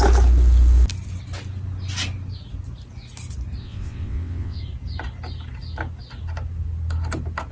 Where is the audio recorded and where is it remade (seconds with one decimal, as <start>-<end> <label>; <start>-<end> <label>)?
0.0-3.6 recorded; 3.6-4.6 remade; 4.6-7.5 recorded